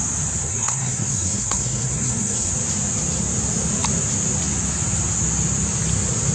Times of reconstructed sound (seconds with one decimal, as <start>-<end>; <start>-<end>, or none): 0.4-2.5